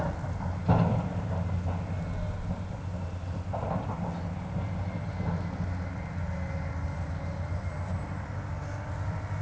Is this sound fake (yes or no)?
no